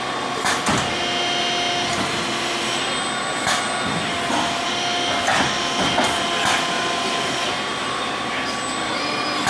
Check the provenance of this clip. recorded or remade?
recorded